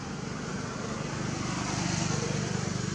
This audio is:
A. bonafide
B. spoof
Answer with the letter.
A